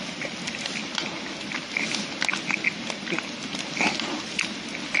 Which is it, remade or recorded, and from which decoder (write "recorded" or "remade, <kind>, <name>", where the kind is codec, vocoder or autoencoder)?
recorded